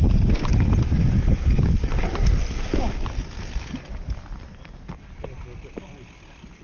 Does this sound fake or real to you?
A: real